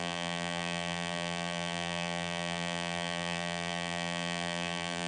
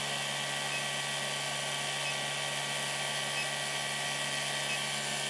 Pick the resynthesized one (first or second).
first